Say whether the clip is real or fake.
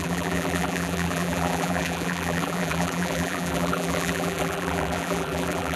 fake